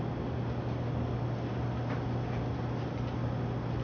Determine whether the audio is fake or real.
real